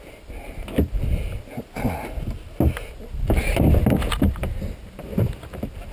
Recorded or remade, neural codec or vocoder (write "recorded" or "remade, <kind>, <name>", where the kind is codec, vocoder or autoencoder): recorded